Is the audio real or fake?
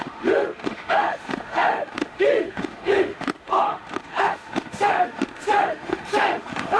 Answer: fake